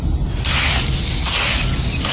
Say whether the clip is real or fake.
real